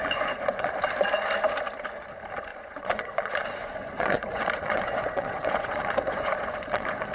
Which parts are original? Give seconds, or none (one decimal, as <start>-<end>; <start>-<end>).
0.7-2.5

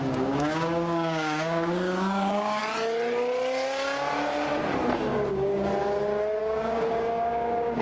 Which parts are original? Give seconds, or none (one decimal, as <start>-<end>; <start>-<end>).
2.6-5.3; 5.7-6.4

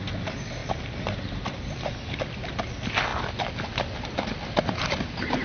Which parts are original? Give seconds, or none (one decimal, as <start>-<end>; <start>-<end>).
0.0-5.4

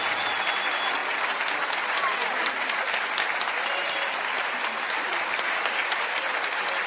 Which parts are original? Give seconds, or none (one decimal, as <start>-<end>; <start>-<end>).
0.0-6.9

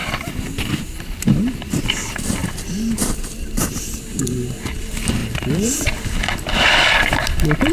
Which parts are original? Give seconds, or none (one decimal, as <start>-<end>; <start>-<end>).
0.0-0.8; 2.4-3.2

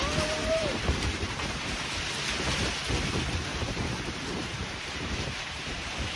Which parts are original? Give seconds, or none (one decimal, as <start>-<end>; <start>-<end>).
0.0-0.4; 1.8-3.5; 5.8-6.2

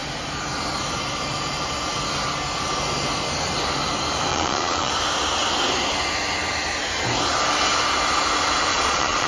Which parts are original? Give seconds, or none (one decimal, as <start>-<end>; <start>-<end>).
0.0-4.3; 4.9-8.7

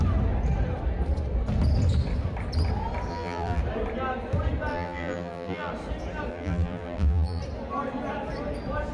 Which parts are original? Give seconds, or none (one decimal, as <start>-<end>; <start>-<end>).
0.0-3.1; 3.6-4.7; 5.7-6.3; 7.4-8.9